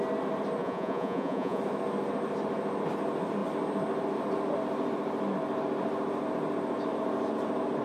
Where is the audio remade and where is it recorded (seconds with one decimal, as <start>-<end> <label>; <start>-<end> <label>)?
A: 0.0-0.6 recorded; 0.6-1.6 remade; 1.6-7.8 recorded